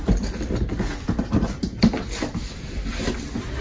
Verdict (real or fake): real